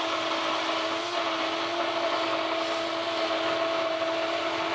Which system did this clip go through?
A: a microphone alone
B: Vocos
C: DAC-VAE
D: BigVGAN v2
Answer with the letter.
A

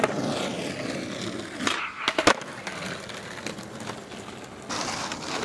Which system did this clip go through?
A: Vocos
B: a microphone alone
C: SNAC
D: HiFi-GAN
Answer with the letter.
B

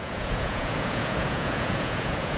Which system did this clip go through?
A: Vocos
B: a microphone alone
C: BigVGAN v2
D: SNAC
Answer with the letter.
A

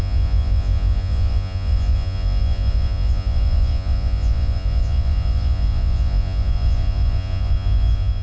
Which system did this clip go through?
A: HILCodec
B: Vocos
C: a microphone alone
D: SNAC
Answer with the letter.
B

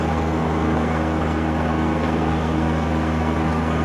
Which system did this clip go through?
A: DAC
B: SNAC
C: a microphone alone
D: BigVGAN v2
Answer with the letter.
B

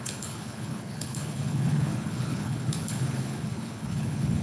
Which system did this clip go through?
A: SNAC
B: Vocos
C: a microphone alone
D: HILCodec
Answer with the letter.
D